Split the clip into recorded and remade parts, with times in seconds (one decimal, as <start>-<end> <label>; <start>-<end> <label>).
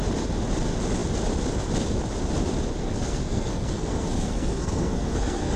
0.0-2.8 recorded; 2.8-5.6 remade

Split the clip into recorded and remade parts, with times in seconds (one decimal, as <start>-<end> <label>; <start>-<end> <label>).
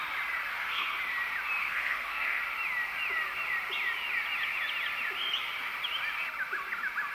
0.0-0.5 recorded; 0.5-1.0 remade; 1.0-1.6 recorded; 1.6-2.4 remade; 2.4-7.1 recorded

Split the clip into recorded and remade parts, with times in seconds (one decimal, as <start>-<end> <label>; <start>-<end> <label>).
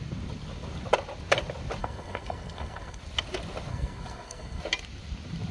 0.0-1.8 recorded; 1.8-3.0 remade; 3.0-3.7 recorded; 3.7-4.6 remade; 4.6-5.5 recorded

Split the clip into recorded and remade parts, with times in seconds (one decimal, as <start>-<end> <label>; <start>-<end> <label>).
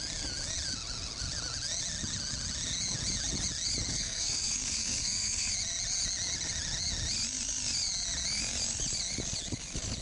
0.0-3.9 recorded; 3.9-5.5 remade; 5.5-10.0 recorded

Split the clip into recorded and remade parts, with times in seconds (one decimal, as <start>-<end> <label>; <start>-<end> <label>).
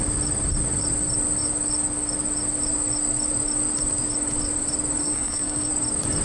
0.0-5.0 recorded; 5.0-5.7 remade; 5.7-6.2 recorded